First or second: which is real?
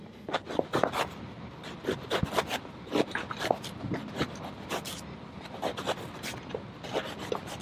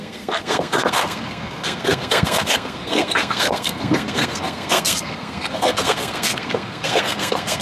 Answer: first